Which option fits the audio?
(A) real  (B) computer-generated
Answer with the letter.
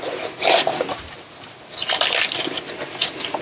A